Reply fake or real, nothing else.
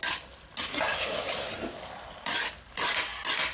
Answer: real